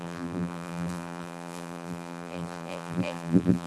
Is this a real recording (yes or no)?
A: no